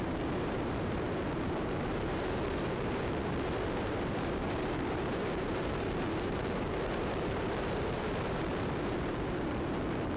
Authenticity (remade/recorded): remade